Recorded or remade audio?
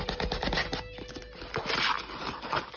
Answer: recorded